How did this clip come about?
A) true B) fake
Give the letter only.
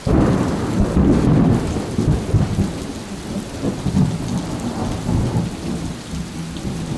A